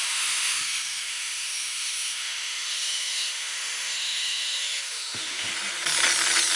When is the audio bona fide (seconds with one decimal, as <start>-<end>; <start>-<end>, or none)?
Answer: 5.5-6.6